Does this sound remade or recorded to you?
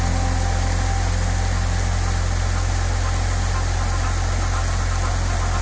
recorded